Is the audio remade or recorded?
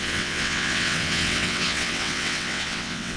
remade